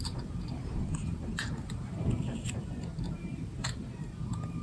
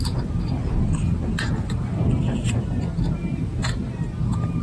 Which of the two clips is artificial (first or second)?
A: first